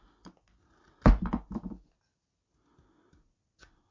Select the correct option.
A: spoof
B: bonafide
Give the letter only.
B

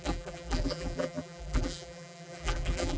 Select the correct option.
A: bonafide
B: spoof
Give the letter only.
B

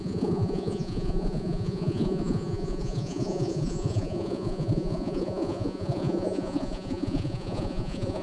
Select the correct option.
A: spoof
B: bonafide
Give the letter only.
A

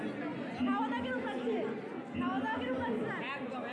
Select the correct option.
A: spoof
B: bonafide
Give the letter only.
B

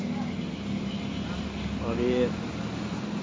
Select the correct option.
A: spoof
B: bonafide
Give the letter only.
B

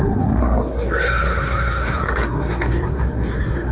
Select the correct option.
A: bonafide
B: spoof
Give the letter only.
B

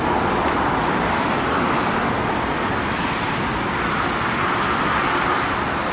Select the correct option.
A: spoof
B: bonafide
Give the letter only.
B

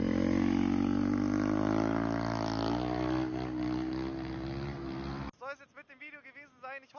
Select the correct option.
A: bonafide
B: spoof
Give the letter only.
A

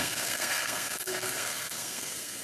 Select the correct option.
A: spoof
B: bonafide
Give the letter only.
A